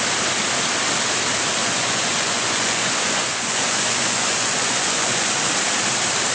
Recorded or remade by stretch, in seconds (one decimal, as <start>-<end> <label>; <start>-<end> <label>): 0.0-1.6 recorded; 1.6-5.4 remade; 5.4-6.3 recorded